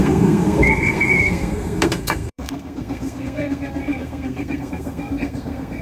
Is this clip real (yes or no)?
no